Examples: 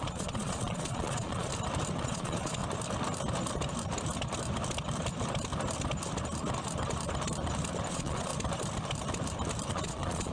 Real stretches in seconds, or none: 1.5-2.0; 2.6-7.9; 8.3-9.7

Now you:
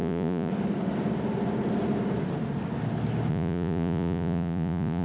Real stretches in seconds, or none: 0.5-3.3

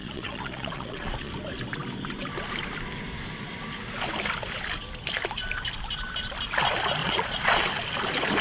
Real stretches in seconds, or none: 1.3-7.0; 7.6-8.4

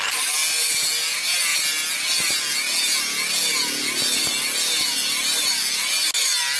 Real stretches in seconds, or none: 0.0-6.6

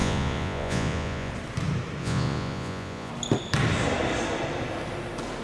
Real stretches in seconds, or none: 1.3-2.0; 3.1-5.4

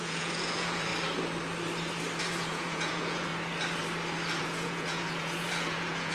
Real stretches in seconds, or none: 0.9-2.2; 3.3-4.4

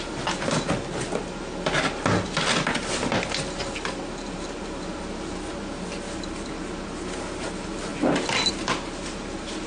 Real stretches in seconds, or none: 0.0-9.7